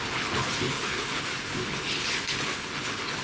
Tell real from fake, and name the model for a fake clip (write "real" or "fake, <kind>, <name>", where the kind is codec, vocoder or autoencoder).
fake, codec, HILCodec